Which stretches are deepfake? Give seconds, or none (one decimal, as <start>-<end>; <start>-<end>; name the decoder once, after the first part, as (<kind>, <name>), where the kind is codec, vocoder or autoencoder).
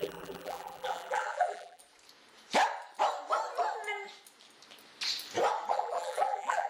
0.0-1.8 (vocoder, BigVGAN v2); 5.7-6.7